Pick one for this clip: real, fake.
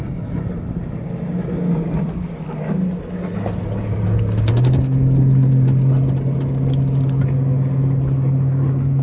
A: real